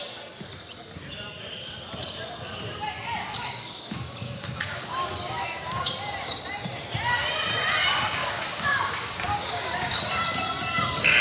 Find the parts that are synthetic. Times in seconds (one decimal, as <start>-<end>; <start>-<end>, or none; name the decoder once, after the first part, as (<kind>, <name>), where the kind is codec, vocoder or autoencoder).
3.2-5.9 (codec, DAC); 8.2-10.0